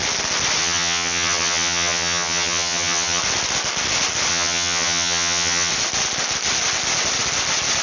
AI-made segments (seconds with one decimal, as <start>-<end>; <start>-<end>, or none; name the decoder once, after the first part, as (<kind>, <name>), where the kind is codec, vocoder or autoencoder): 0.6-3.2 (vocoder, HiFi-GAN); 4.3-5.7